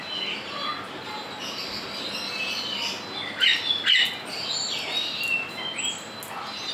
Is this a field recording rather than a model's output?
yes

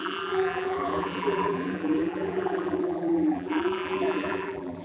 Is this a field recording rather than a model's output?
no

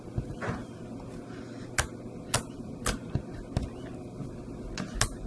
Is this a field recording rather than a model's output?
yes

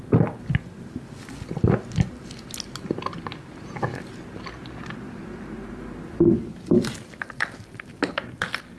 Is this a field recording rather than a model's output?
yes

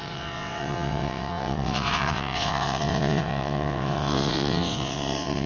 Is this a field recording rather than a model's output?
no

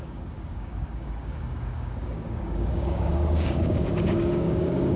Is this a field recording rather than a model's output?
no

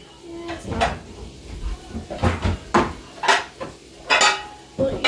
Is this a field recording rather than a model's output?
yes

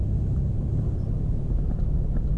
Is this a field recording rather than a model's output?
yes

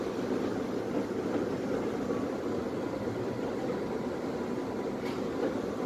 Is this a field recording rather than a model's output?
yes